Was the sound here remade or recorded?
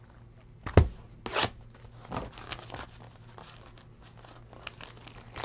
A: recorded